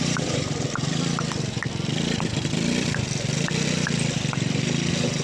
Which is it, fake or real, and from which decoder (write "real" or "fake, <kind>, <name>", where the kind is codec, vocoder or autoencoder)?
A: fake, vocoder, BigVGAN v2